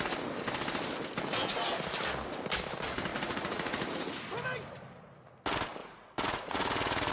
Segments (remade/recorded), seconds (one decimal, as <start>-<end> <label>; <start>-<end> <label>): 0.0-3.1 recorded; 3.1-4.2 remade; 4.2-5.8 recorded; 5.8-7.1 remade